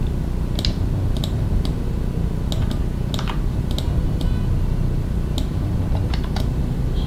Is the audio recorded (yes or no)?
yes